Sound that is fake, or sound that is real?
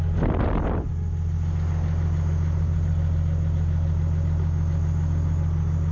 real